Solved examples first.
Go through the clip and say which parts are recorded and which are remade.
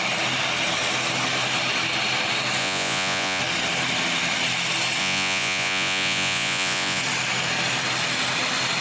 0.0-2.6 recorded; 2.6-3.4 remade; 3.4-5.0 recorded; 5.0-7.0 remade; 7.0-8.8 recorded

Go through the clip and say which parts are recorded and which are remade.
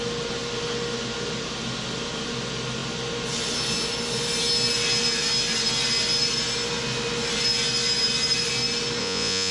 0.0-9.0 recorded; 9.0-9.5 remade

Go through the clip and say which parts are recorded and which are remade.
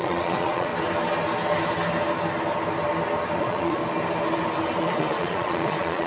0.0-0.7 remade; 0.7-3.4 recorded; 3.4-3.8 remade; 3.8-4.8 recorded; 4.8-6.1 remade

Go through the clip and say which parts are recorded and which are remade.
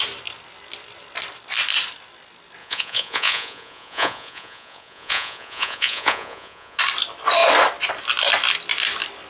0.0-2.6 recorded; 2.6-6.8 remade; 6.8-9.3 recorded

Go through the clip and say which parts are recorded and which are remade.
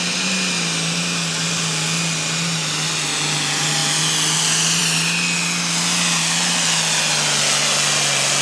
0.0-8.4 recorded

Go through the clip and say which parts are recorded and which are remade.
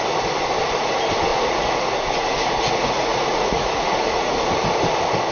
0.0-1.3 recorded; 1.3-4.5 remade; 4.5-5.3 recorded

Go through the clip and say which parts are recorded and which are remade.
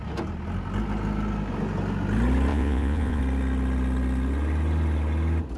0.0-2.5 recorded; 2.5-3.2 remade; 3.2-5.6 recorded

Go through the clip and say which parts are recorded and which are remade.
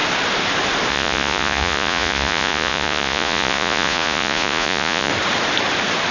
0.0-0.9 recorded; 0.9-5.1 remade; 5.1-6.1 recorded